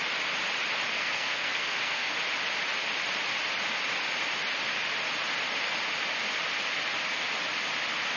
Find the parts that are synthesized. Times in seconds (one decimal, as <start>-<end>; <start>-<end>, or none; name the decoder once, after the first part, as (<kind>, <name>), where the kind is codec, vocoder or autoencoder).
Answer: 0.9-2.1 (codec, SNAC)